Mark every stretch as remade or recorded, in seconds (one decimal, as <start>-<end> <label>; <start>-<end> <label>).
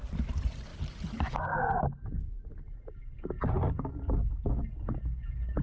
0.0-5.6 recorded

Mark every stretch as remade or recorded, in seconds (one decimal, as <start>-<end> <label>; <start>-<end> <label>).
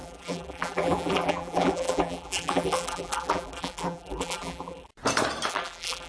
0.0-4.9 remade; 4.9-5.5 recorded; 5.5-6.1 remade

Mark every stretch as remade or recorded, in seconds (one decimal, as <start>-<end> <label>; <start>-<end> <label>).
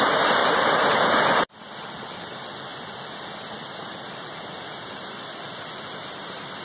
0.0-6.6 recorded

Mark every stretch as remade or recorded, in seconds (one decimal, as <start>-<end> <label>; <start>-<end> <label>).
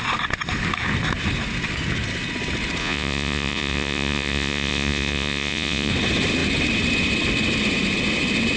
0.0-2.8 recorded; 2.8-5.9 remade; 5.9-8.6 recorded